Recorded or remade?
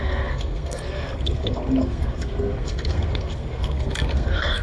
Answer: remade